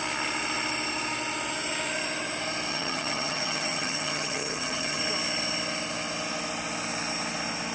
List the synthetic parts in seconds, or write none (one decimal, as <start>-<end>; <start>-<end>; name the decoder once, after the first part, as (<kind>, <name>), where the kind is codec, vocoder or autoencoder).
2.7-5.0 (vocoder, HiFi-GAN)